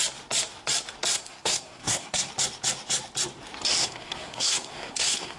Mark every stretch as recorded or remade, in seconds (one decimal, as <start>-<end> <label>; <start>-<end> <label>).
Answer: 0.0-1.1 recorded; 1.1-2.3 remade; 2.3-3.8 recorded; 3.8-5.4 remade